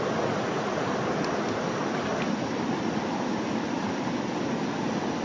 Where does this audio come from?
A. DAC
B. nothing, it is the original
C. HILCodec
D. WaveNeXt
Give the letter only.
B